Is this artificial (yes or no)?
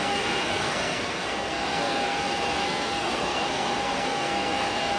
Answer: yes